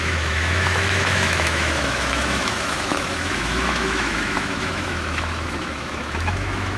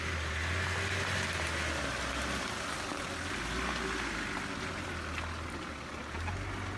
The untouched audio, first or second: second